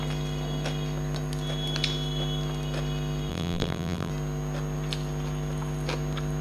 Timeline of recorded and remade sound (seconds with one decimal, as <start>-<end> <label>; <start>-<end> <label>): 0.0-3.3 recorded; 3.3-4.1 remade; 4.1-6.4 recorded